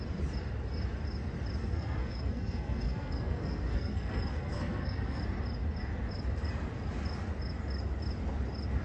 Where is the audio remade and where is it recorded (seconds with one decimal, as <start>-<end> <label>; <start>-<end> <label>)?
0.0-1.6 recorded; 1.6-5.2 remade; 5.2-8.8 recorded